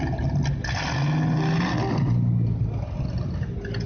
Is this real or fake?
real